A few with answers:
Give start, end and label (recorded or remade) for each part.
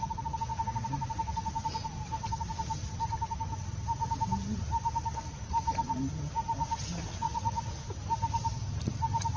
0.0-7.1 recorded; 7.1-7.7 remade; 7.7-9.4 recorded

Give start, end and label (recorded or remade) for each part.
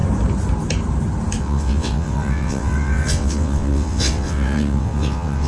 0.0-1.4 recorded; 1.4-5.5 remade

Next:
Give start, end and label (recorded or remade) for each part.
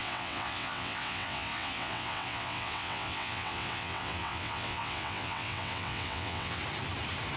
0.0-6.6 remade; 6.6-7.4 recorded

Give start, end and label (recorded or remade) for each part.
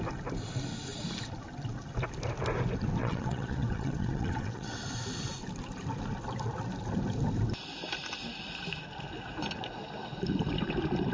0.0-3.0 recorded; 3.0-4.8 remade; 4.8-11.1 recorded